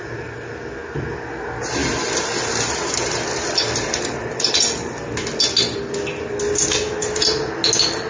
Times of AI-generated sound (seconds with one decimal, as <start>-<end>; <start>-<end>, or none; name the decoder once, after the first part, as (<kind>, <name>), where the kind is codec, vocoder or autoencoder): none